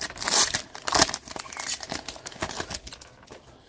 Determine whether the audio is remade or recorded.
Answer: recorded